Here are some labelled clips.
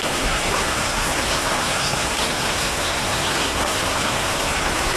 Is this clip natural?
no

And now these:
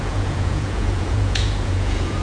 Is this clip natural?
no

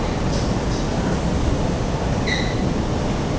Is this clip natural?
yes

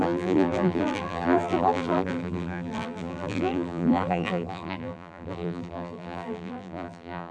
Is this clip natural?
no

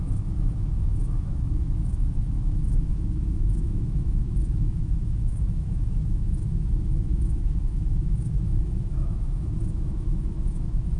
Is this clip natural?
no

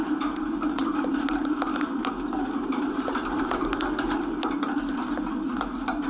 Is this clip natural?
yes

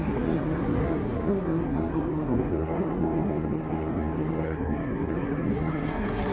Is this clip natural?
no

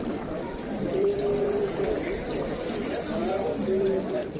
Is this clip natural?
no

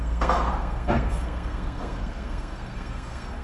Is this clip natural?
no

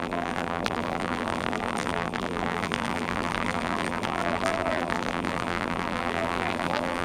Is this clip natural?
no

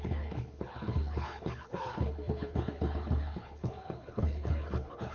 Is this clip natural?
no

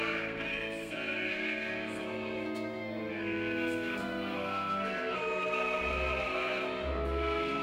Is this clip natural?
no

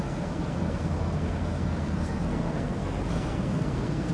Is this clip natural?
no